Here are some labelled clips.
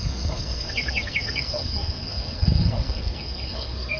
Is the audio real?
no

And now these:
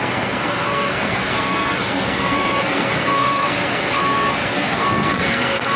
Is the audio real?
no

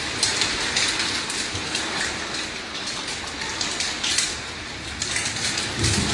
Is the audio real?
no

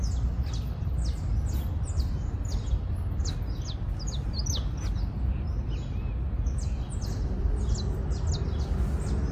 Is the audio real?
yes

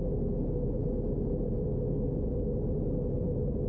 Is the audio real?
yes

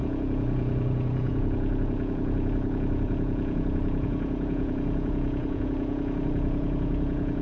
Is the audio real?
no